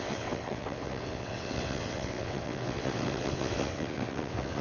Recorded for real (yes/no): no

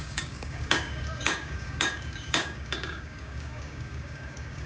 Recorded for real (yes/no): no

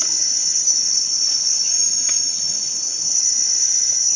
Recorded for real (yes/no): no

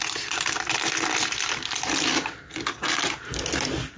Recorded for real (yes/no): yes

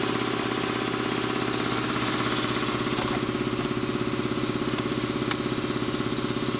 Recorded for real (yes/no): yes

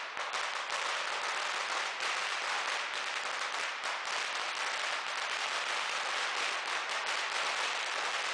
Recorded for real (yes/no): yes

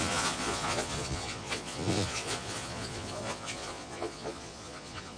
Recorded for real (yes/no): no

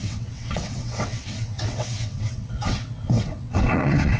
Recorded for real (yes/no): no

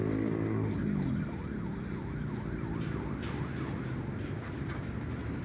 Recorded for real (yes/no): yes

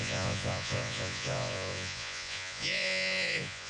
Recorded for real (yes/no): no